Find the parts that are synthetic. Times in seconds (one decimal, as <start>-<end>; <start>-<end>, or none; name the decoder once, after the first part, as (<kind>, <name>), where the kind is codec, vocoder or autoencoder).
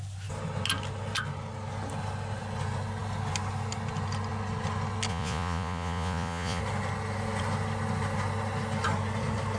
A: 5.1-6.6 (vocoder, Vocos)